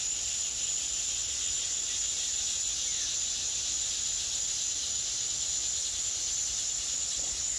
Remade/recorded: recorded